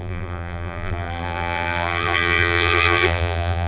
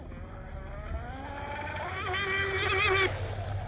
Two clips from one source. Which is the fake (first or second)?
first